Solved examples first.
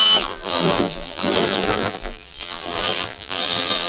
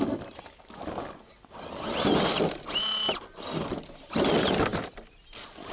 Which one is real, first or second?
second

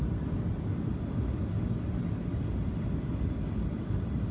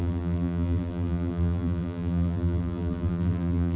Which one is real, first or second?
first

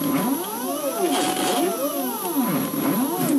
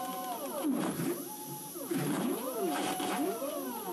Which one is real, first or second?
first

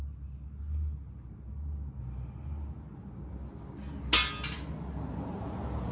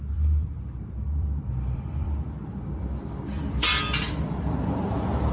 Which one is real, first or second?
first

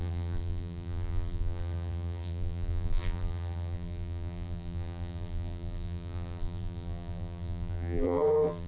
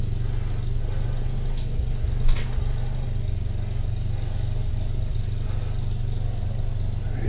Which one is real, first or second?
second